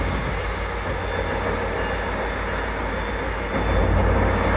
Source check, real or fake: real